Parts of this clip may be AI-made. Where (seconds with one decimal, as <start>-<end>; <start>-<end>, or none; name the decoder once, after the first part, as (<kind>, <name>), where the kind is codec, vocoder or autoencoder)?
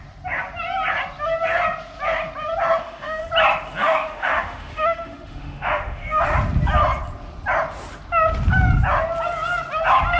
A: 2.8-3.3 (autoencoder, DAC-VAE); 3.8-6.2